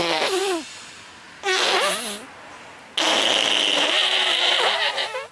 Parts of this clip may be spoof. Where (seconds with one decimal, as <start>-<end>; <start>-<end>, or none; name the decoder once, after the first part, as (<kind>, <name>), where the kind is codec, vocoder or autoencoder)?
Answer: 0.0-0.4 (vocoder, BigVGAN v2); 3.6-5.3

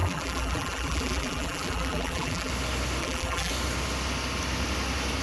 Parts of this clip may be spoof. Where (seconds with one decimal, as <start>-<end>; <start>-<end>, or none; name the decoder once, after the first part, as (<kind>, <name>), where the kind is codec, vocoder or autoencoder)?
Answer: 0.0-2.5 (vocoder, BigVGAN v2); 3.0-3.5

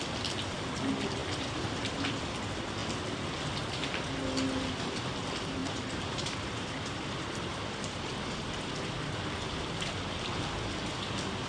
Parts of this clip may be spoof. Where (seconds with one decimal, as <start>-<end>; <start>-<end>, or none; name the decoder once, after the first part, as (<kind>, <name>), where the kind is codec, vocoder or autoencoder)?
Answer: 1.2-2.2 (vocoder, BigVGAN v2); 5.6-9.1

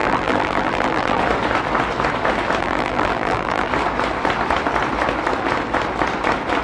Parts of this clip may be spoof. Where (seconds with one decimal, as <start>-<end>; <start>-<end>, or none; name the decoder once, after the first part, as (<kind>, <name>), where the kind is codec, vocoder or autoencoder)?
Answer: 0.0-1.2 (vocoder, BigVGAN v2); 2.6-3.7

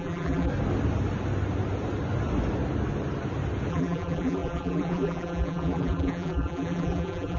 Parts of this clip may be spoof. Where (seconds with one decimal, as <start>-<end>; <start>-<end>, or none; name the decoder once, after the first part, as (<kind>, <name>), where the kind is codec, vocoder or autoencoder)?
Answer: 0.0-0.5 (vocoder, BigVGAN v2); 3.7-7.4

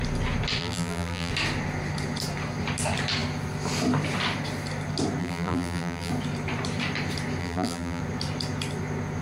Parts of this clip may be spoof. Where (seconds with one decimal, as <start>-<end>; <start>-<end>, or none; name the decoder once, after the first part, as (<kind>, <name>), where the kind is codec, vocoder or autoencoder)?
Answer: 0.6-1.3 (vocoder, BigVGAN v2); 5.2-6.1; 7.4-8.0